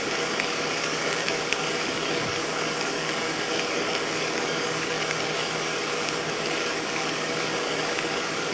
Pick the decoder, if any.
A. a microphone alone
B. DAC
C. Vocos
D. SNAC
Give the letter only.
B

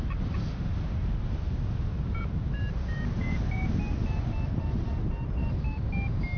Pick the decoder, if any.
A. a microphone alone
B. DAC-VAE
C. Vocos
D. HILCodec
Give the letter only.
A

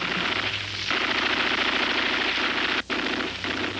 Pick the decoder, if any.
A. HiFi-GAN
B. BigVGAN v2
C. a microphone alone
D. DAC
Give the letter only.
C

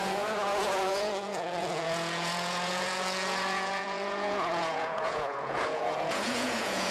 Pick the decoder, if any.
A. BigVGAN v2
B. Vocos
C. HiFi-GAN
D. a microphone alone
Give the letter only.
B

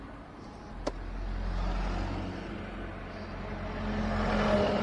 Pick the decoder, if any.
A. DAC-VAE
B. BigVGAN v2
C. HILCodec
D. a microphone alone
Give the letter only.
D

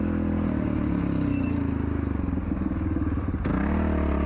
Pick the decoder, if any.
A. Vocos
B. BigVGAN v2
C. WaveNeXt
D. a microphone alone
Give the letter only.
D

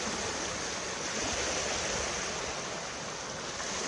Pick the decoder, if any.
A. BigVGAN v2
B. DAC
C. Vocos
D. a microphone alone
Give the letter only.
D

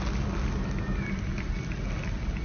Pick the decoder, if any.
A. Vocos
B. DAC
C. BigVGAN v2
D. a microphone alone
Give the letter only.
D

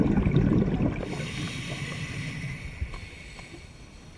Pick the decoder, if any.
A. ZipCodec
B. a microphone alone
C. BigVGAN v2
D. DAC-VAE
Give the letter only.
B